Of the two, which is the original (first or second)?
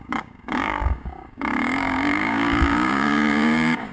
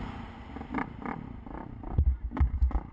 second